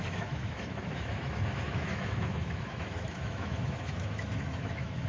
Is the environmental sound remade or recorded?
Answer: remade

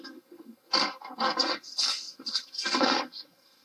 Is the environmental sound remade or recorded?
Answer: remade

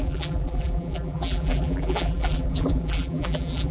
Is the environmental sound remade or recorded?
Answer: remade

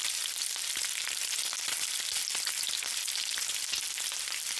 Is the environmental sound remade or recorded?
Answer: recorded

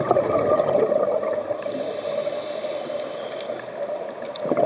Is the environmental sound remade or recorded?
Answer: recorded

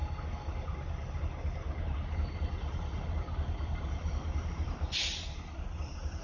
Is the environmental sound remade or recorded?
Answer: recorded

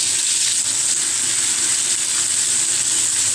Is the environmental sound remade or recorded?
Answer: recorded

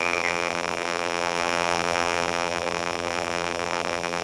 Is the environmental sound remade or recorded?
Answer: remade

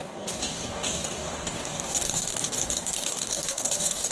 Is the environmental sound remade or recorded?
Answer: remade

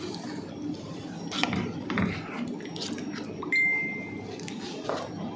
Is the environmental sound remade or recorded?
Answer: recorded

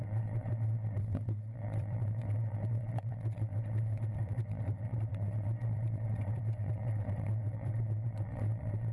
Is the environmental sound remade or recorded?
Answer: remade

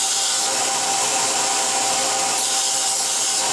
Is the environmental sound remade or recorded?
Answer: recorded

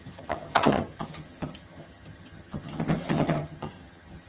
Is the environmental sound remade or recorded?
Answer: remade